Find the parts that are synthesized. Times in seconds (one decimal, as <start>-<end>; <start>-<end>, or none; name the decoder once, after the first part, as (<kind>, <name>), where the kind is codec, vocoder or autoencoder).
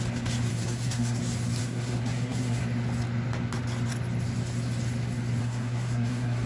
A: 0.5-1.2 (codec, SNAC); 1.6-2.6; 5.4-6.5